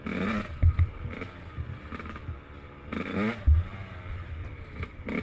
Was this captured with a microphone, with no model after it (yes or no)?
yes